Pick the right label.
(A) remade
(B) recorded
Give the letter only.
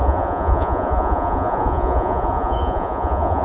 A